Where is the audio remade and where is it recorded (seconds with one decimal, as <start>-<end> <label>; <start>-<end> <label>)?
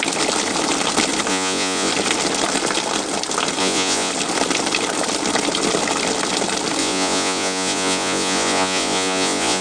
0.0-1.3 recorded; 1.3-1.9 remade; 1.9-3.6 recorded; 3.6-4.1 remade; 4.1-6.8 recorded; 6.8-9.6 remade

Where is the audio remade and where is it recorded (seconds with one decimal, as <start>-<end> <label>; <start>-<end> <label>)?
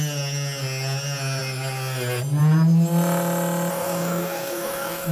0.0-3.7 recorded; 3.7-5.1 remade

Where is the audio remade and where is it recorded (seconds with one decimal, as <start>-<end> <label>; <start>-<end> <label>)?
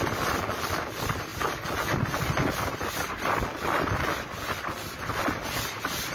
0.0-6.1 recorded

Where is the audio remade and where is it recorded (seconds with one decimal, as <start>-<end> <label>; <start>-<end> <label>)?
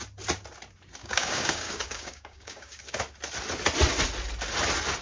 0.0-1.0 recorded; 1.0-3.0 remade; 3.0-5.0 recorded